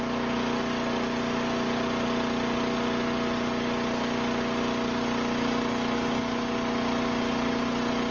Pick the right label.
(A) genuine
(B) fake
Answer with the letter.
A